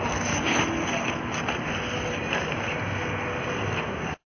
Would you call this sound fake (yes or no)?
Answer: no